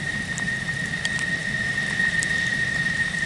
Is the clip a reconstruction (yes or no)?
yes